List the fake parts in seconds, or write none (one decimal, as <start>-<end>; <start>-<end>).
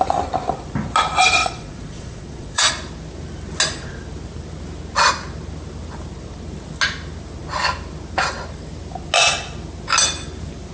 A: 1.4-2.7